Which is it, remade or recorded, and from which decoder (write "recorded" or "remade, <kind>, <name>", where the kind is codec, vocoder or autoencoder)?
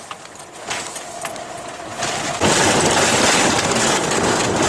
recorded